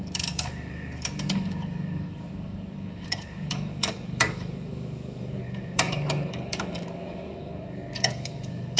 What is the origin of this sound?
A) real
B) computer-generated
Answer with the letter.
B